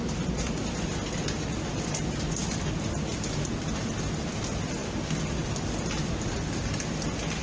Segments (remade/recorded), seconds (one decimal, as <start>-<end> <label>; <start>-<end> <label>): 0.0-7.4 recorded